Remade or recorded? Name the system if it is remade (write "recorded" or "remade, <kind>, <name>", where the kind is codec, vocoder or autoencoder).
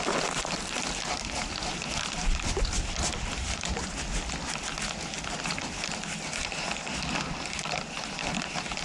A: recorded